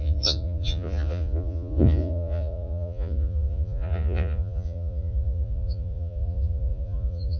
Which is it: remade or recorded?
remade